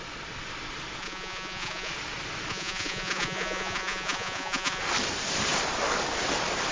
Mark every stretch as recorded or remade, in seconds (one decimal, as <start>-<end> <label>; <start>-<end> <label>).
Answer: 0.0-1.0 recorded; 1.0-1.9 remade; 1.9-2.5 recorded; 2.5-4.8 remade; 4.8-6.7 recorded